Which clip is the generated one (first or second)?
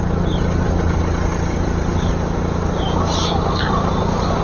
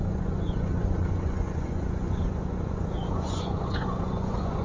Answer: second